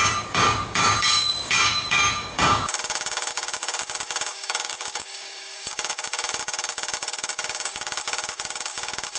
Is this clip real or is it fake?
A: fake